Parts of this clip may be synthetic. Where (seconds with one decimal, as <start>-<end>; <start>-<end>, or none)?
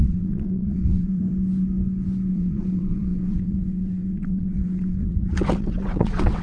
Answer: 0.0-1.2; 2.3-6.4